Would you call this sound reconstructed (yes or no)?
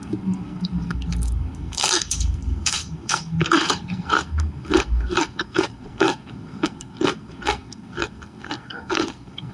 yes